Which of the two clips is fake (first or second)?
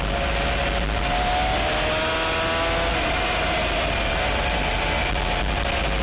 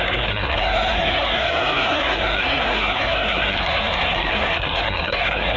second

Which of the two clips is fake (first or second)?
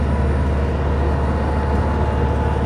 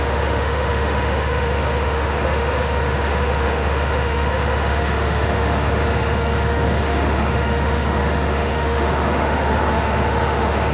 second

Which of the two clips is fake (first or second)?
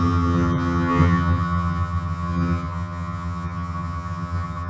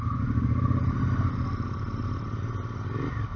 first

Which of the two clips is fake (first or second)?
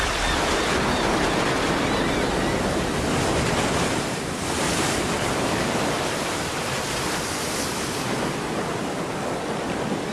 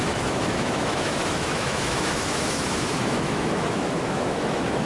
second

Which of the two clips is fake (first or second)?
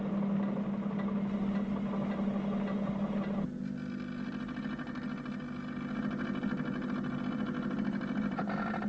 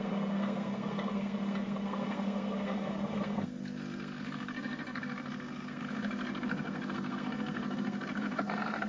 second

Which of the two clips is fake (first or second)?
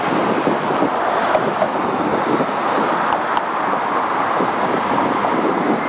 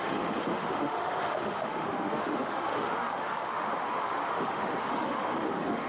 second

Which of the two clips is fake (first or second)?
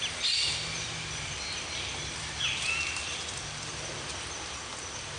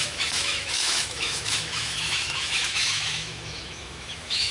second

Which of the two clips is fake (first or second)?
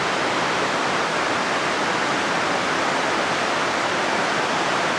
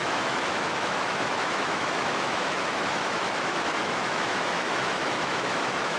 second